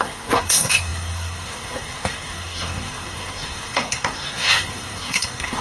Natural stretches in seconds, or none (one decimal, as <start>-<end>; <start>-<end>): none